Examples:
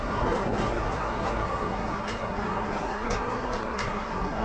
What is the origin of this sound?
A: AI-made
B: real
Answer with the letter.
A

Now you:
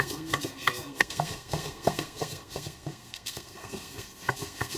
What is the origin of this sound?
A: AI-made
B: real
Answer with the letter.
A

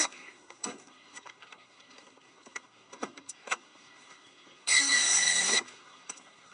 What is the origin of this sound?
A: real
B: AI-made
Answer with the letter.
B